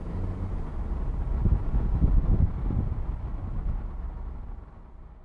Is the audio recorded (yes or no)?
yes